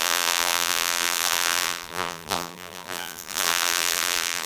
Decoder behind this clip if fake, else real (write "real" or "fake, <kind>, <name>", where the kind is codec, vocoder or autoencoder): fake, vocoder, BigVGAN v2